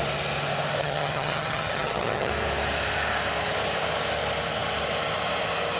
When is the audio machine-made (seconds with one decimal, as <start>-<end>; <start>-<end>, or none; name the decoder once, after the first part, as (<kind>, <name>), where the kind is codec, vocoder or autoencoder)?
0.8-2.3 (vocoder, HiFi-GAN)